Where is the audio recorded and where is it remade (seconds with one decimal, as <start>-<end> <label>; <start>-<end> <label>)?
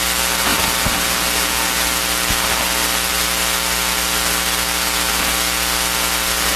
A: 0.0-6.6 recorded